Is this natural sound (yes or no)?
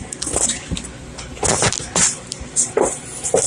yes